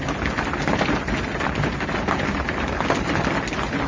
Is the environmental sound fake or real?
real